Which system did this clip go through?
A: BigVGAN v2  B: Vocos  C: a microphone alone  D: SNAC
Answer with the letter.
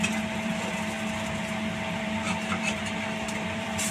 A